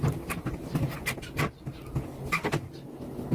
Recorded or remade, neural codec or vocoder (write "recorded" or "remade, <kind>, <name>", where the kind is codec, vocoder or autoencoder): recorded